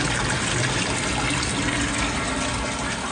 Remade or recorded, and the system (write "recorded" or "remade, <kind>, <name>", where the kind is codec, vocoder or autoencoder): recorded